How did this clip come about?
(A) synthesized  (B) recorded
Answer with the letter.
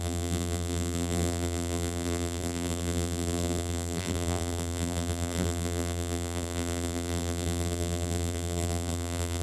A